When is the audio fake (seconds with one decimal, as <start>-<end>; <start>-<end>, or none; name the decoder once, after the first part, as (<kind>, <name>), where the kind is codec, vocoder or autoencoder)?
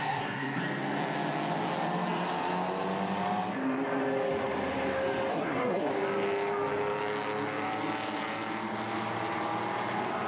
0.0-0.6 (codec, SNAC); 5.3-5.9